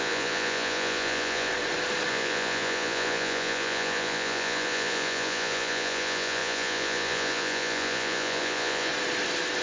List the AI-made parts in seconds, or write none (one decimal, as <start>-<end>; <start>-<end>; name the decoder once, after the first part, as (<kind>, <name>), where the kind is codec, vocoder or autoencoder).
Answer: 0.0-1.5 (vocoder, Vocos); 2.1-8.9